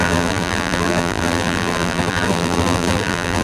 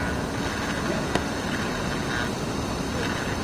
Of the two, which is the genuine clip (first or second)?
second